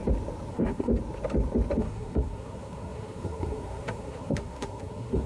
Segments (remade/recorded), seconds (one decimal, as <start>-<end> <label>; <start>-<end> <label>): 0.0-0.5 recorded; 0.5-0.9 remade; 0.9-1.8 recorded; 1.8-5.3 remade